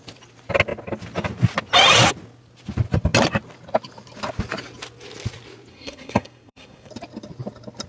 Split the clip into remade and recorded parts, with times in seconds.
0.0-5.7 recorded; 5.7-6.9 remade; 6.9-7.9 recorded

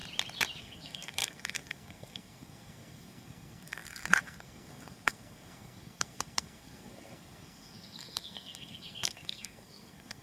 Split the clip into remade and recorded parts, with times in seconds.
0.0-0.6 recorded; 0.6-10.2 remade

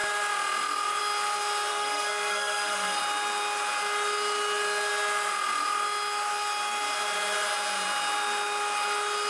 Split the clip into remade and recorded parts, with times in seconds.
0.0-1.7 recorded; 1.7-3.0 remade; 3.0-9.3 recorded

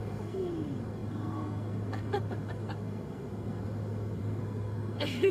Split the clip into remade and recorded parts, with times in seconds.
0.0-5.3 remade